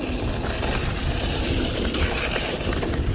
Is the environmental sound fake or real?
real